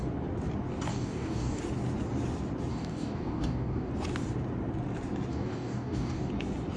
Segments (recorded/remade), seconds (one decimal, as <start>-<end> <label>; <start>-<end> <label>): 0.0-0.9 recorded; 0.9-1.6 remade; 1.6-2.7 recorded; 2.7-3.9 remade; 3.9-5.3 recorded; 5.3-6.3 remade; 6.3-6.8 recorded